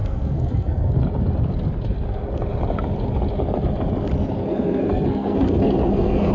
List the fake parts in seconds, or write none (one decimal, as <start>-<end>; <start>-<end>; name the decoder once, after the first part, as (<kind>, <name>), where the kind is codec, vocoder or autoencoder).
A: 0.0-0.9 (codec, SNAC); 4.4-6.3